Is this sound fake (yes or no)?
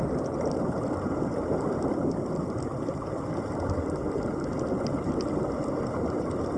no